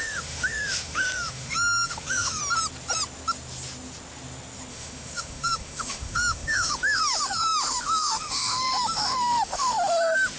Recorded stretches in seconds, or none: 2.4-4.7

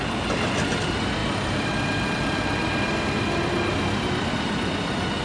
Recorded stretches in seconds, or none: 0.0-5.2

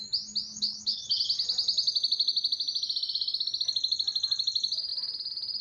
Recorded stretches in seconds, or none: 0.0-0.5; 1.2-5.6

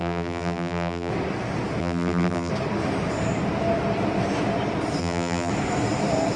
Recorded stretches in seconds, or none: 1.1-1.8; 2.5-5.0; 5.5-6.4

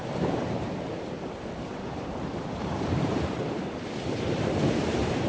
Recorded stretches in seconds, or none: 1.2-1.7

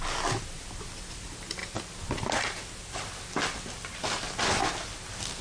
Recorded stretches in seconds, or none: 0.0-5.4